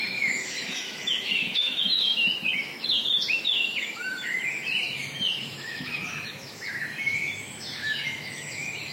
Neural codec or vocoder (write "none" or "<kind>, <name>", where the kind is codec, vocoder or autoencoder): autoencoder, DAC-VAE